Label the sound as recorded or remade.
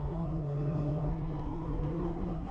remade